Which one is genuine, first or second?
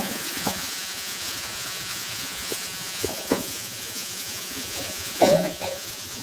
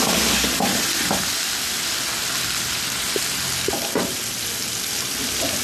second